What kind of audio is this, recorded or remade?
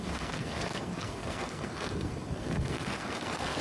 remade